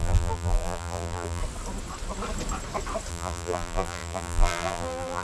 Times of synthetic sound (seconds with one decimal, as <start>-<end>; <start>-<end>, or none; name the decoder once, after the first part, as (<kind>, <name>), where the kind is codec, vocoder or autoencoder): 0.0-1.4 (vocoder, BigVGAN v2); 3.1-5.2